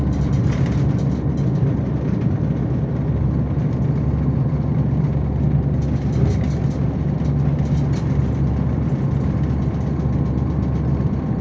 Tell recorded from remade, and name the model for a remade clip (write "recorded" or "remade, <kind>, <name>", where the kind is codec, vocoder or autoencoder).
recorded